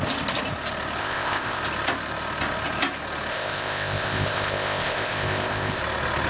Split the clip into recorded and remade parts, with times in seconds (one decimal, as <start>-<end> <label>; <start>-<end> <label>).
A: 0.0-1.0 recorded; 1.0-1.6 remade; 1.6-3.3 recorded; 3.3-5.8 remade; 5.8-6.3 recorded